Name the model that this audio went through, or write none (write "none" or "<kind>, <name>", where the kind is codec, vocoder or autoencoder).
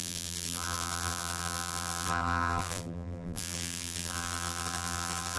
vocoder, BigVGAN v2